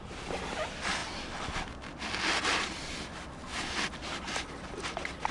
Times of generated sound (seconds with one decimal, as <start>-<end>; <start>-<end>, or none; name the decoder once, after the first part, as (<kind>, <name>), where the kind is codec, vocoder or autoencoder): none